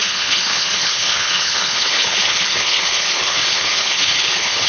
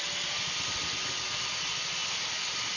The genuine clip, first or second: second